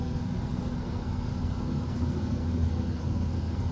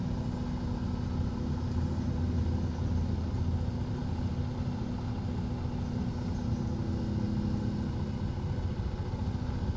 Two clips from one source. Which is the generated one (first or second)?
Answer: first